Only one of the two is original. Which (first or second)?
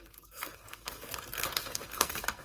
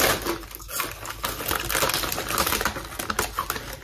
second